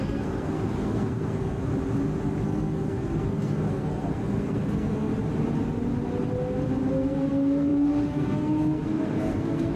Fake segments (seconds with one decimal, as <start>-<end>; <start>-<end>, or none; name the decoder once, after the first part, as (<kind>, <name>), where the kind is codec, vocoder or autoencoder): 0.0-1.7 (codec, SNAC); 2.4-5.1; 6.9-9.8